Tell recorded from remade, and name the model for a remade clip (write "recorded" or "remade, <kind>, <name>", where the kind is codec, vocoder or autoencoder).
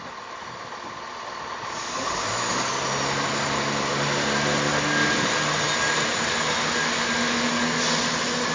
recorded